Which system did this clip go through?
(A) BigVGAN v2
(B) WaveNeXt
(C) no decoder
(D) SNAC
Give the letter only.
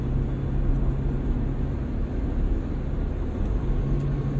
C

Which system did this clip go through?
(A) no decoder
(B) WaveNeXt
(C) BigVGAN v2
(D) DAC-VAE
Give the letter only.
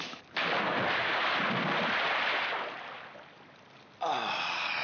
A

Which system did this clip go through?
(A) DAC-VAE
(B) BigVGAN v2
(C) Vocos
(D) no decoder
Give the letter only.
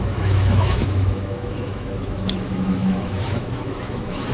A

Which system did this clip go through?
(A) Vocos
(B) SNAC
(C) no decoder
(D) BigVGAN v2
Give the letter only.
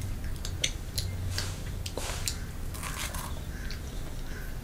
C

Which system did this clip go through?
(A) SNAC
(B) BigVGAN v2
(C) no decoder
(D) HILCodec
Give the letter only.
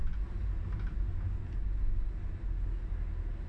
C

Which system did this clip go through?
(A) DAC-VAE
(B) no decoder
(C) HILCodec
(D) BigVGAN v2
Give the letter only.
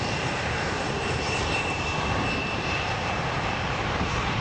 D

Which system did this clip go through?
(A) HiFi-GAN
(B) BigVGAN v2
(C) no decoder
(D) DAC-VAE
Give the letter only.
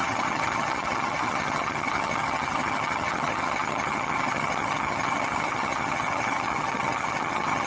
A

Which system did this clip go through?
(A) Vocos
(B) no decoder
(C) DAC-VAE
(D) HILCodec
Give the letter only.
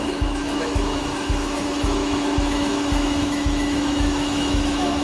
C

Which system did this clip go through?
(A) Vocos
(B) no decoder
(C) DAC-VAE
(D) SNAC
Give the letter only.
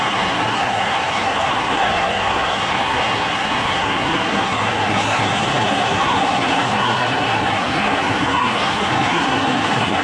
D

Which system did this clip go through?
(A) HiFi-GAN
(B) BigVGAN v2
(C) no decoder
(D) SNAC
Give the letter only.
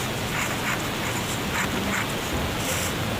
C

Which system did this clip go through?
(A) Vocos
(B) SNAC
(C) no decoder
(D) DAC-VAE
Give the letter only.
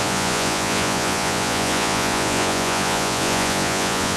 A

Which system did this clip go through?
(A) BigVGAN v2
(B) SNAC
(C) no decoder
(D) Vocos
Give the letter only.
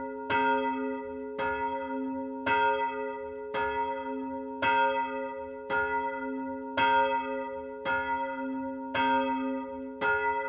C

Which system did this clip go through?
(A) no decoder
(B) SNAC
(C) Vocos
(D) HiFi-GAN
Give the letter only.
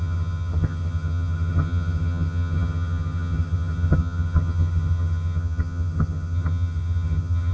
D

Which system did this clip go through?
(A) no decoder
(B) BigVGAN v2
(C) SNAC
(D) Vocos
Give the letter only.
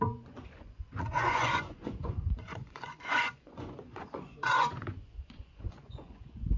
D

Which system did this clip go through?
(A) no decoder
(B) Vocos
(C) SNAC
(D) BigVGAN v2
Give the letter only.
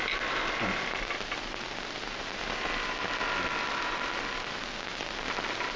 A